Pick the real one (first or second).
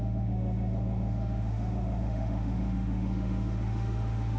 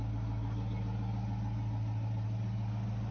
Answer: second